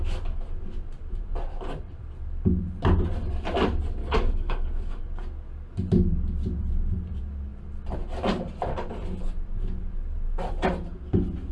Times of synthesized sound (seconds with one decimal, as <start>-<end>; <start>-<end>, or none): 4.0-5.0